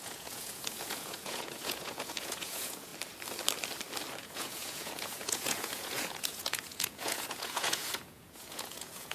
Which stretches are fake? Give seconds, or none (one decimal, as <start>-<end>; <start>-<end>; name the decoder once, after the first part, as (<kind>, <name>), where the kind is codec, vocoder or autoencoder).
0.0-2.9 (vocoder, Vocos); 4.2-9.1